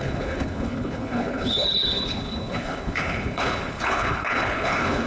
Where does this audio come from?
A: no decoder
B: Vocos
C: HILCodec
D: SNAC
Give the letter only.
C